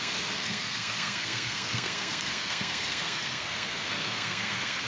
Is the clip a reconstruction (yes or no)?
yes